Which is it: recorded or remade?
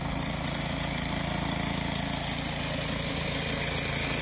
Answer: recorded